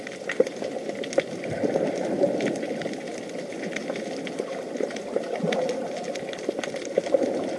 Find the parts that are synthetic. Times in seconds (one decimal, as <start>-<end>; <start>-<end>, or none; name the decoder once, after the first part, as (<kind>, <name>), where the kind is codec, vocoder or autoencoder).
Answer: none